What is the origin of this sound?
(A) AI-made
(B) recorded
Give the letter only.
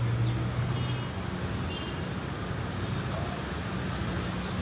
B